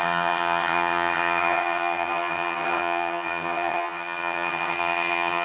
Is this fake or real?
fake